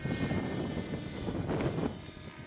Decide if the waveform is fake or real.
real